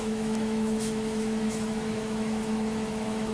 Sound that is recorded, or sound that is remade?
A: remade